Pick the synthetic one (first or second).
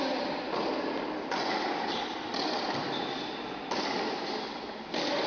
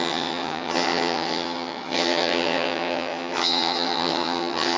second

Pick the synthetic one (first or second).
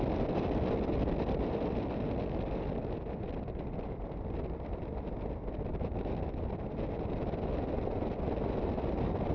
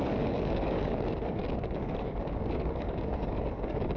second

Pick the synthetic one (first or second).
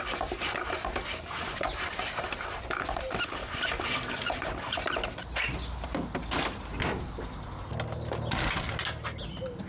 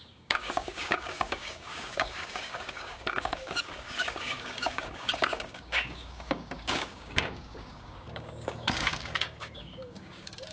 second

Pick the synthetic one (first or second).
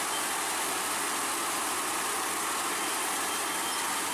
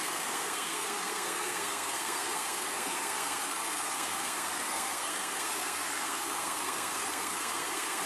second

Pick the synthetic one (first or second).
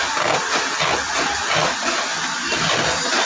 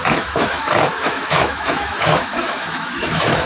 second